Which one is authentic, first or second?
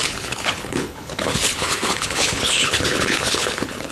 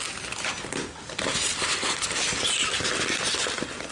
second